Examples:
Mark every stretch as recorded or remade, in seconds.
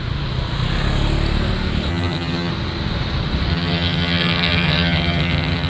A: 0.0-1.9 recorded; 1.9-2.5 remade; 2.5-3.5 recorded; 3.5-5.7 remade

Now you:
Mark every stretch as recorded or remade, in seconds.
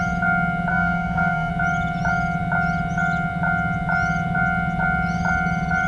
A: 0.0-0.7 recorded; 0.7-1.5 remade; 1.5-5.9 recorded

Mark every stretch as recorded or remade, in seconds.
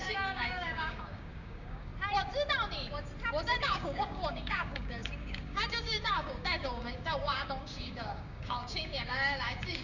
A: 0.0-1.9 remade; 1.9-3.6 recorded; 3.6-9.8 remade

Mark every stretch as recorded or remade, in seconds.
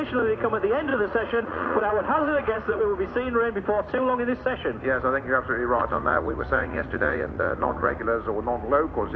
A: 0.0-0.9 recorded; 0.9-2.8 remade; 2.8-5.8 recorded; 5.8-8.0 remade; 8.0-9.2 recorded